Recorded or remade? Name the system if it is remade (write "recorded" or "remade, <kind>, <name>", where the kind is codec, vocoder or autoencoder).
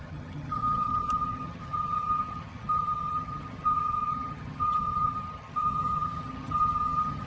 remade, vocoder, HiFi-GAN